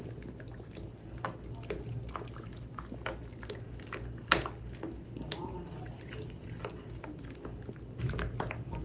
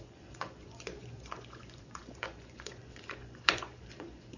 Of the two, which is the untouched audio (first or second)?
first